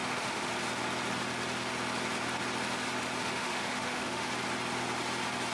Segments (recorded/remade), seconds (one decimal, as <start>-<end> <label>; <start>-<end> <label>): 0.0-0.5 remade; 0.5-3.2 recorded; 3.2-4.3 remade; 4.3-5.5 recorded